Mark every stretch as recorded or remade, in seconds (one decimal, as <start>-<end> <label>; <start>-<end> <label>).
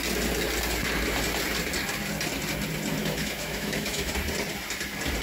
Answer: 0.0-3.0 recorded; 3.0-4.1 remade; 4.1-5.2 recorded